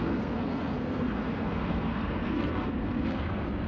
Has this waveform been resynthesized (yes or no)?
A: yes